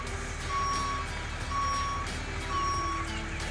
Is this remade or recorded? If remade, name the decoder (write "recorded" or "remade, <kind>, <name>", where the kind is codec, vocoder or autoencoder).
recorded